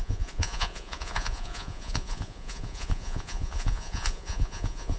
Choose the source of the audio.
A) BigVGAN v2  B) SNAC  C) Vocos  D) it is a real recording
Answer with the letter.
C